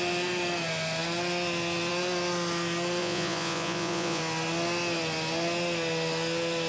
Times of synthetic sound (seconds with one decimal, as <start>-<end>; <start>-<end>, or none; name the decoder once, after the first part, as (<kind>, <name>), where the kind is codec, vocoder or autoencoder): 3.0-4.2 (vocoder, Vocos)